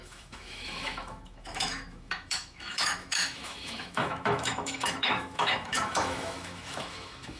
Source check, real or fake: fake